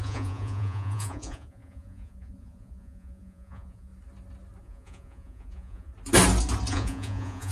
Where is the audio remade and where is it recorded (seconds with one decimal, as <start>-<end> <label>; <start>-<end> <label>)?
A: 0.0-3.9 remade; 3.9-4.6 recorded; 4.6-5.9 remade; 5.9-6.7 recorded; 6.7-7.5 remade

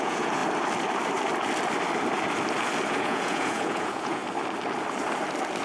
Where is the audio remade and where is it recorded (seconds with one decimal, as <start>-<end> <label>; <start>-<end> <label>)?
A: 0.0-0.4 remade; 0.4-2.9 recorded; 2.9-4.2 remade; 4.2-5.6 recorded

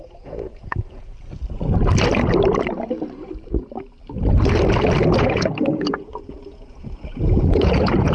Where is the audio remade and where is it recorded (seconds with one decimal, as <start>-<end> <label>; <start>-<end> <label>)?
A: 0.0-1.1 remade; 1.1-5.2 recorded; 5.2-8.1 remade

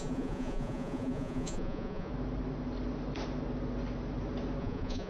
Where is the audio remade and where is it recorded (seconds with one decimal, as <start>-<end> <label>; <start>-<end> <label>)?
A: 0.0-2.1 remade; 2.1-4.6 recorded; 4.6-5.1 remade

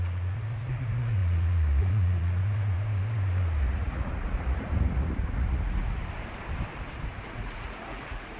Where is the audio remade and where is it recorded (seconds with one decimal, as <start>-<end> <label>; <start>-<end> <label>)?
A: 0.0-2.4 remade; 2.4-3.7 recorded; 3.7-6.0 remade; 6.0-7.2 recorded; 7.2-8.4 remade

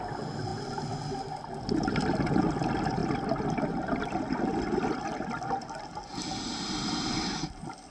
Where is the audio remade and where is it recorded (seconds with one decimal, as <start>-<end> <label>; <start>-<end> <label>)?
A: 0.0-7.9 recorded

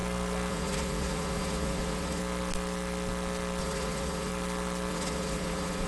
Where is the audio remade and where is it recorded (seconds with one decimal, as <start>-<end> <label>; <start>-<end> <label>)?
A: 0.0-0.5 recorded; 0.5-2.2 remade; 2.2-3.6 recorded; 3.6-4.3 remade; 4.3-4.9 recorded; 4.9-5.9 remade